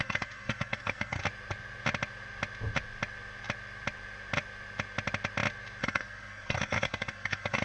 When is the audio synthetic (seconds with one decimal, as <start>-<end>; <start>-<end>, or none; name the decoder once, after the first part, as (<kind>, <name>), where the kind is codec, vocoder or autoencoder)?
0.0-1.2 (codec, SNAC); 5.8-7.6

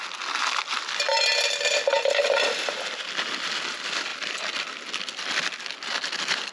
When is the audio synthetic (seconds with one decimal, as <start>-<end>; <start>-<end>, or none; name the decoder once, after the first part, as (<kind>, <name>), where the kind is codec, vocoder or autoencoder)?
none